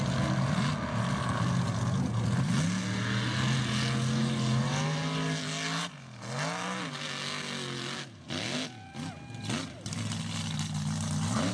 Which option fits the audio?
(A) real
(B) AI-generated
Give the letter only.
A